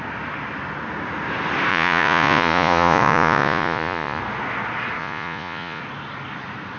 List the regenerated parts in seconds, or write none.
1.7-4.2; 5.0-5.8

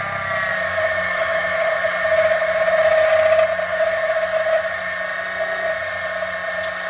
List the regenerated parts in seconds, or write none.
0.5-3.1; 3.7-4.8

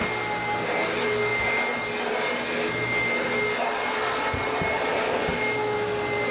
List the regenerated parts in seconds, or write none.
none

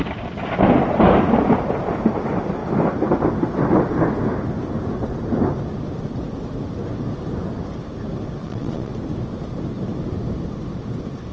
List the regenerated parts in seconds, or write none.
8.4-8.9

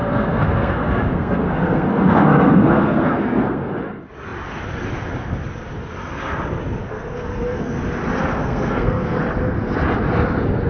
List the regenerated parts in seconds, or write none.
0.0-3.7; 6.8-7.8; 8.2-9.2

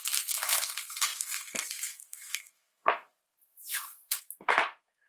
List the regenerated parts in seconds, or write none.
0.0-5.1